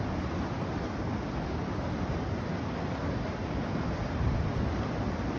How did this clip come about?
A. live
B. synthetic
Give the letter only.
A